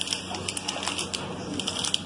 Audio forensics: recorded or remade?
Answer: recorded